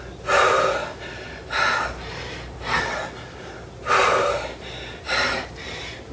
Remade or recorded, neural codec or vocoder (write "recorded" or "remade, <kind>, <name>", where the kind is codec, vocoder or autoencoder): recorded